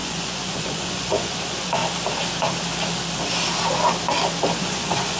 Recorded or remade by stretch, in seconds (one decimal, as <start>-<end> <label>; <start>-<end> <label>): 0.0-1.8 remade; 1.8-4.6 recorded; 4.6-5.2 remade